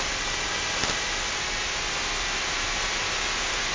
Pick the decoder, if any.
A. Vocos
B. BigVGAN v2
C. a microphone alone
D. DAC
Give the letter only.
C